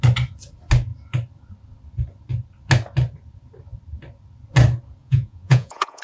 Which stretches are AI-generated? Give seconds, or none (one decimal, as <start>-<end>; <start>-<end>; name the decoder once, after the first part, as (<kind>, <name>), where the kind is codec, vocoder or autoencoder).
5.0-6.0 (vocoder, Vocos)